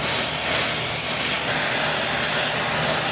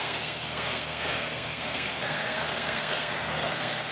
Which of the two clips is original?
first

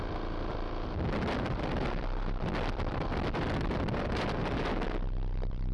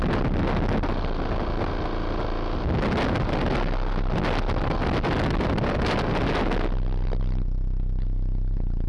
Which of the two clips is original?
second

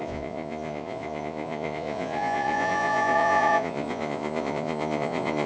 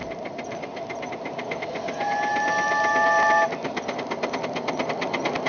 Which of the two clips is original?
second